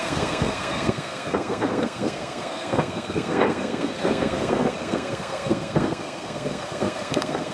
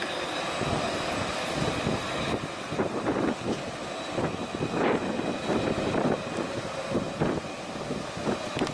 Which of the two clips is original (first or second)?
second